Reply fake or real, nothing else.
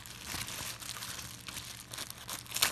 real